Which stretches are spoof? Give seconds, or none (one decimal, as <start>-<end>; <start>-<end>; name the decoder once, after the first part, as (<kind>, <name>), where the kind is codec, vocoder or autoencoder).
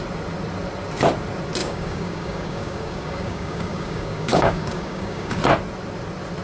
1.6-5.4 (codec, DAC)